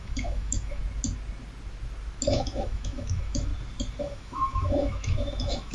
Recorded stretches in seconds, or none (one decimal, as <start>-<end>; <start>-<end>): 0.8-2.3; 3.5-4.0